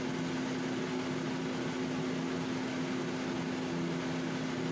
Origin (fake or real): real